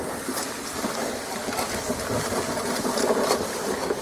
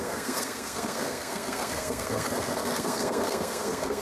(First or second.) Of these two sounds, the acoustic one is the first